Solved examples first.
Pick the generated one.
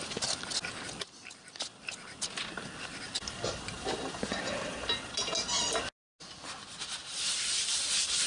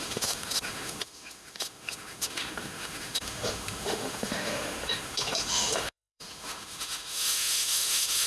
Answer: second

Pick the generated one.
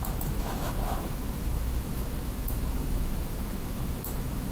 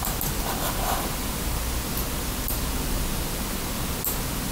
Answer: first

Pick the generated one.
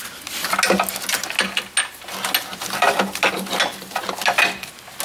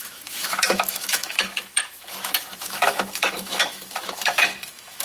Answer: second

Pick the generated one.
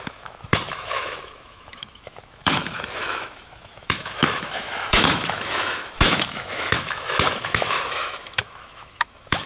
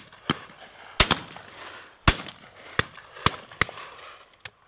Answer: first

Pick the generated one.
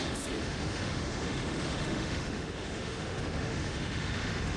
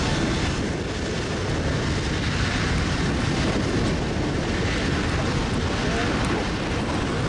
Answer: first